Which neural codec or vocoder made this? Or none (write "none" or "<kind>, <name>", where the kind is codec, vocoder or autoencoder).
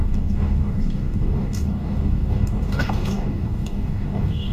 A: codec, DAC